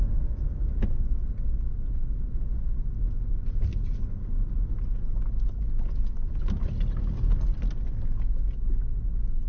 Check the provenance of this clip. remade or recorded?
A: recorded